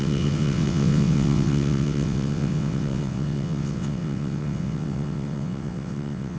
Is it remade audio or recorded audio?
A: remade